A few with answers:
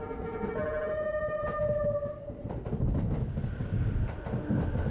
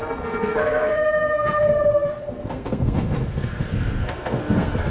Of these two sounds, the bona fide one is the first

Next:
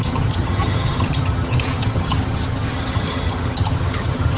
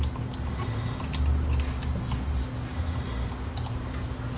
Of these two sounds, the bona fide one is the second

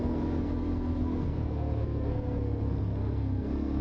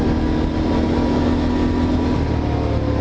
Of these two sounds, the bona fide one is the second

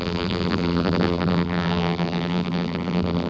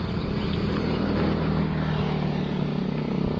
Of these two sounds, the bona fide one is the second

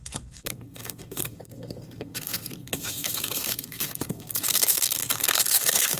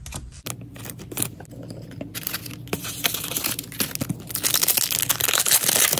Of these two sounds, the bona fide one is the second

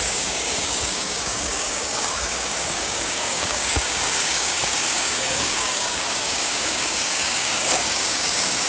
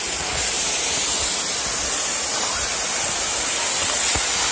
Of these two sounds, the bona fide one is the second